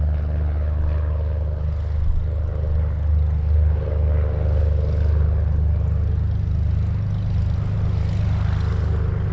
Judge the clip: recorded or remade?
recorded